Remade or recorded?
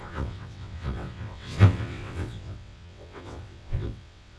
remade